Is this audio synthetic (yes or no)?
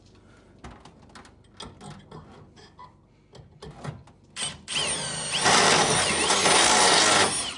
no